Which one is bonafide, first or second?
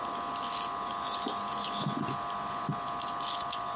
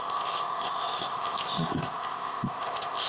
first